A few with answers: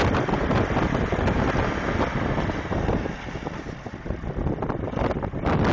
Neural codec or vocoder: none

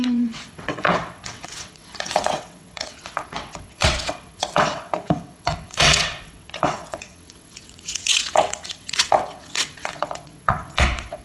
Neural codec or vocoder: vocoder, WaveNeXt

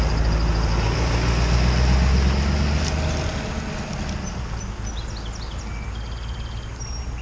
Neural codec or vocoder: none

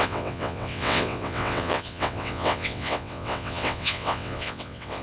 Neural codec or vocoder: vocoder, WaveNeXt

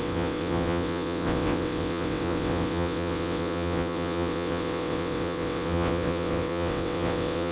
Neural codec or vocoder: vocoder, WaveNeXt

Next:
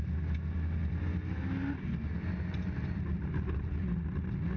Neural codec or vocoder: none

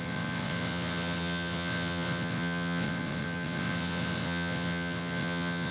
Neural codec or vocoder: vocoder, WaveNeXt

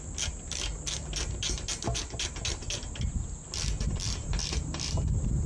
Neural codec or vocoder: none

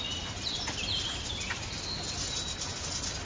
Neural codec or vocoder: none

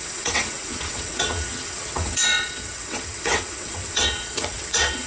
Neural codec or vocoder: vocoder, WaveNeXt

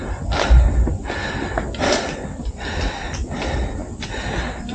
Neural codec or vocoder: none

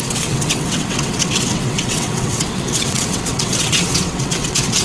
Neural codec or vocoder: vocoder, WaveNeXt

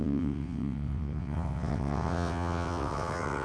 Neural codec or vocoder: vocoder, WaveNeXt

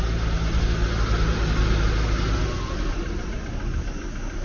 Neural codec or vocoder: none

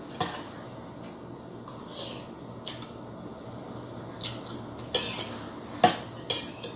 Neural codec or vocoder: none